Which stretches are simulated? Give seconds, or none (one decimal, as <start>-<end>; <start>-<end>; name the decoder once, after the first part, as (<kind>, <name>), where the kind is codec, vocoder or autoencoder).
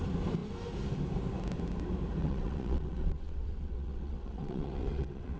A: 2.2-5.4 (vocoder, WaveNeXt)